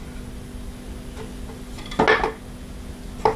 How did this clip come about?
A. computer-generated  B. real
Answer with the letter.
B